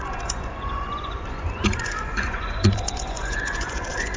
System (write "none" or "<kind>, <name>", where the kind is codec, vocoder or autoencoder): vocoder, Vocos